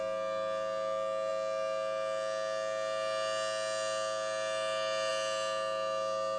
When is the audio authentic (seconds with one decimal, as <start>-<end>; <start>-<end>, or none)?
0.0-6.4